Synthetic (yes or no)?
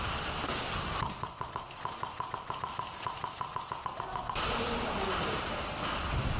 no